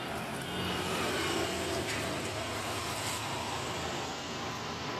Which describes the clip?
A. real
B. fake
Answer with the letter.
A